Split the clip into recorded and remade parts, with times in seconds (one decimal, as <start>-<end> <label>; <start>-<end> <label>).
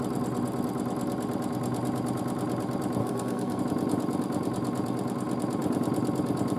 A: 0.0-3.0 recorded; 3.0-3.6 remade; 3.6-6.6 recorded